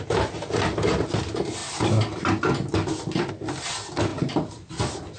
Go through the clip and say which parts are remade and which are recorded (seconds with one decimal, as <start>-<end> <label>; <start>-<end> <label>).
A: 0.0-5.2 recorded